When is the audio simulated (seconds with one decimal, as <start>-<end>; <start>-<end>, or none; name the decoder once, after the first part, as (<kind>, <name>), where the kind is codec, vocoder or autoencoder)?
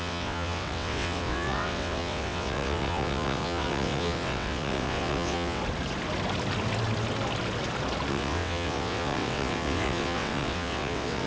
0.0-5.6 (vocoder, WaveNeXt); 8.1-11.3